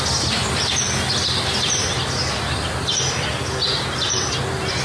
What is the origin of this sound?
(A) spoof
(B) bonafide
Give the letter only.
B